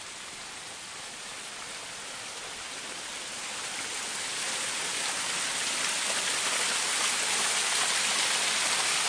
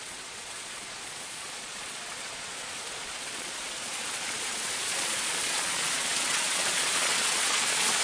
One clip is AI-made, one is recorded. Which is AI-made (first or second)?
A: second